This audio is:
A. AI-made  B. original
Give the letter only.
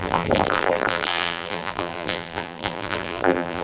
A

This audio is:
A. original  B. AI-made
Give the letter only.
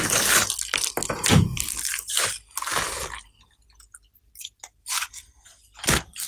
A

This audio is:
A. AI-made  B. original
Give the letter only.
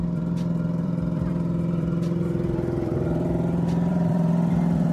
A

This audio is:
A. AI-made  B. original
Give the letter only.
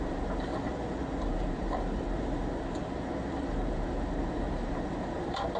A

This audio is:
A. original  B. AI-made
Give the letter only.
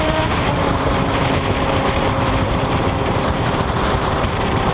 B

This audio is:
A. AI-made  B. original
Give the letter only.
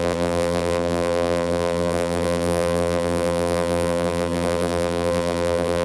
A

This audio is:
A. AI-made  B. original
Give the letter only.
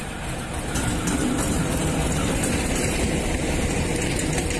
A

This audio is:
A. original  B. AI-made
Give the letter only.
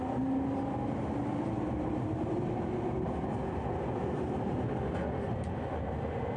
A